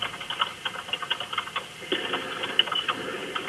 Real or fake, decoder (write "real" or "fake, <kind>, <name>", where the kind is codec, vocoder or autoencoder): real